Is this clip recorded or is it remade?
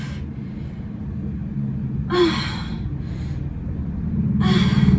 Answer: recorded